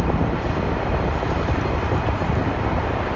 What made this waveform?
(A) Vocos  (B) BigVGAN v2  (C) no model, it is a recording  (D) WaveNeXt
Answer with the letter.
B